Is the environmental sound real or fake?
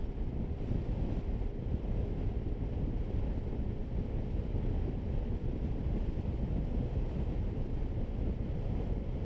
real